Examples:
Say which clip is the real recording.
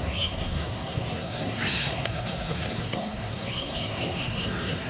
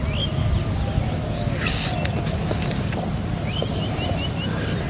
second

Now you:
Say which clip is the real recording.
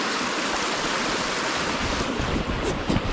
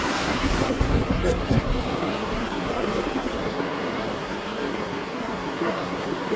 first